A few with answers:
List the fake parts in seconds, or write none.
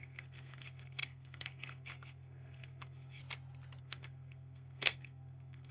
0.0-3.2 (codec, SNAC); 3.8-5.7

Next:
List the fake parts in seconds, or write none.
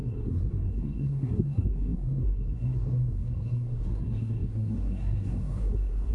0.0-6.1 (codec, SNAC)